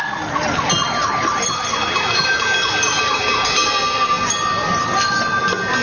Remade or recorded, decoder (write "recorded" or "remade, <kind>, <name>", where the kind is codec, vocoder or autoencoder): recorded